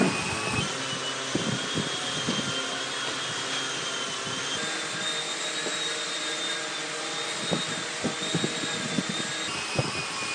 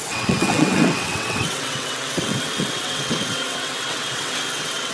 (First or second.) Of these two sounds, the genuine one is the first